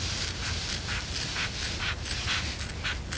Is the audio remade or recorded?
recorded